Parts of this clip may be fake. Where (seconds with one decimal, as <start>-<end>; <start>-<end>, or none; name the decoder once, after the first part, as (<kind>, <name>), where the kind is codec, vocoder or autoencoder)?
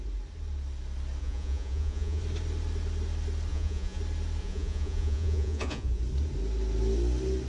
1.2-2.2 (vocoder, Vocos); 3.5-4.0; 4.4-6.0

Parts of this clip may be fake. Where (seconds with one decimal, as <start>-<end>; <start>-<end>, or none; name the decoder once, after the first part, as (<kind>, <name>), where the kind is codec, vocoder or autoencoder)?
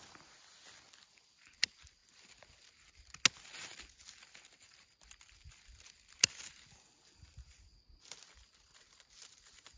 none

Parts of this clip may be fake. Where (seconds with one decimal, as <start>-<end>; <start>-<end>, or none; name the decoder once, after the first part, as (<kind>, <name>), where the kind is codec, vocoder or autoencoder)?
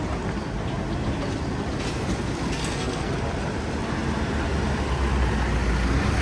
2.6-3.1 (codec, SNAC)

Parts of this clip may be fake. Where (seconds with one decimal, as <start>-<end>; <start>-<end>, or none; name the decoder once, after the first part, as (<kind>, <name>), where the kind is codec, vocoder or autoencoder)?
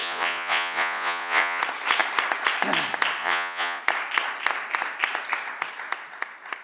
0.0-1.6 (vocoder, Vocos); 3.2-3.8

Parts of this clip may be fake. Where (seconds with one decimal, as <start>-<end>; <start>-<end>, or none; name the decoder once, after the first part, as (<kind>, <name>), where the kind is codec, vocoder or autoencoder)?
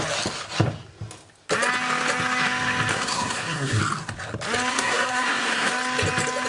2.9-3.8 (codec, SNAC); 4.7-5.7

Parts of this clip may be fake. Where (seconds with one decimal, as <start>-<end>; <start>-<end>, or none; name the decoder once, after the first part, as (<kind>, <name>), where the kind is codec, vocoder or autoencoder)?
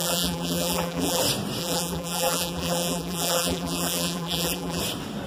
0.0-1.2 (vocoder, BigVGAN v2); 1.6-4.8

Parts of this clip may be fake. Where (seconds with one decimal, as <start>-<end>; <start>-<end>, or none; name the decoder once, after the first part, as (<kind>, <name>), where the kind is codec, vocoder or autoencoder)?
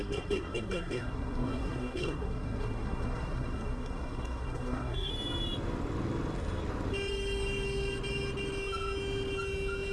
0.0-5.1 (codec, SNAC)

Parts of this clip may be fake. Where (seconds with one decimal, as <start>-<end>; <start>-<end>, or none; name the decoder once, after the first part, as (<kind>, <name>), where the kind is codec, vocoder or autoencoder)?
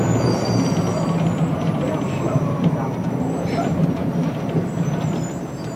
0.0-4.0 (vocoder, BigVGAN v2); 5.3-5.8